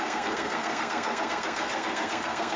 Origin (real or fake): fake